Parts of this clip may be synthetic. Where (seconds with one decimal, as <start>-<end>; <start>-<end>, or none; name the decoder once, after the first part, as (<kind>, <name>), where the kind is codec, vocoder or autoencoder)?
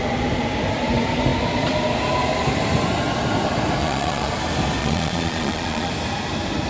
3.8-4.3 (vocoder, Vocos); 4.8-5.9